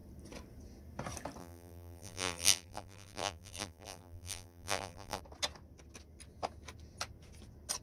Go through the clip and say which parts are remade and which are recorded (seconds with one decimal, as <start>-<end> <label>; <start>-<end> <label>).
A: 0.0-1.4 recorded; 1.4-5.2 remade; 5.2-7.8 recorded